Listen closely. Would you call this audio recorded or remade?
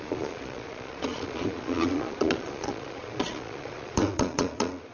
remade